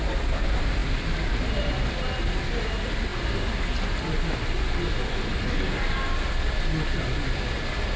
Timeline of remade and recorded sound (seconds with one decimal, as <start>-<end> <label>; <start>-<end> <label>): 0.0-8.0 recorded